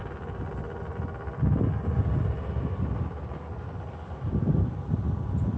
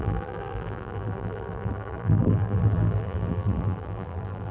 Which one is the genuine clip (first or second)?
first